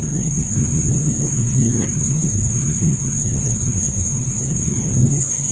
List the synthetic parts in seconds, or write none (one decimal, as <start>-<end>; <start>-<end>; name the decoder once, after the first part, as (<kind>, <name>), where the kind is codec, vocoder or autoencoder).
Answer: 0.0-5.5 (codec, SNAC)